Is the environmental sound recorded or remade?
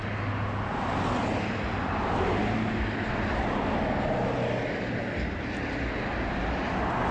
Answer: recorded